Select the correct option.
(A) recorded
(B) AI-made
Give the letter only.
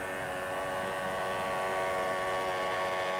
A